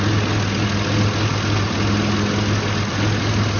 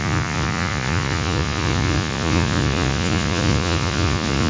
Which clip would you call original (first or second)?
first